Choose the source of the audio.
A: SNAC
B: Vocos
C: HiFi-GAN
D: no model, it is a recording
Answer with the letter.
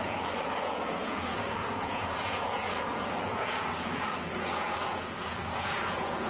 B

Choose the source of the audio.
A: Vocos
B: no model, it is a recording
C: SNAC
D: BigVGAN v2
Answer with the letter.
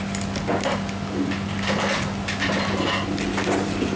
B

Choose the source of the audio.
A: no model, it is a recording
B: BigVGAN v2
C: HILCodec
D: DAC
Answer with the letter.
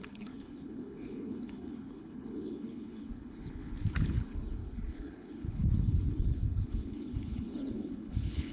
C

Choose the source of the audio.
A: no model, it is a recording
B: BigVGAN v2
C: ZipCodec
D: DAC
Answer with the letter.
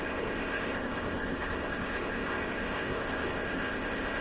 C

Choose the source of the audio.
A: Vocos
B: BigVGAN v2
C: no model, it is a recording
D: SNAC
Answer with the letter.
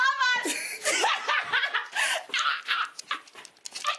B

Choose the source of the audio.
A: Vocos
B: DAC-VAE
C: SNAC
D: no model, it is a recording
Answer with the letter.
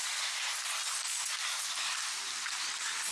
D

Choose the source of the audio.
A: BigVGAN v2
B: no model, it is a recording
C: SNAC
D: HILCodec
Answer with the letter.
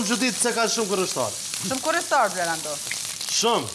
B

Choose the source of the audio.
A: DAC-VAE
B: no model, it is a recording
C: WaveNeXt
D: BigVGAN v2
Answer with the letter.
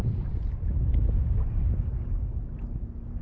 B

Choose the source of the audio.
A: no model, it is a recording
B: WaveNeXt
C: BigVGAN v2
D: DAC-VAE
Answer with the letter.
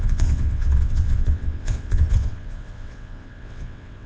B